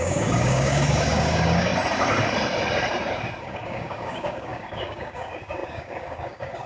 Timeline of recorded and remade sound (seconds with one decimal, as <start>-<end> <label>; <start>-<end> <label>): 0.0-1.7 remade; 1.7-3.4 recorded; 3.4-6.7 remade